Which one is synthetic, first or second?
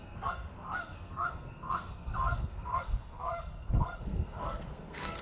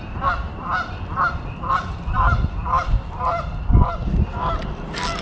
first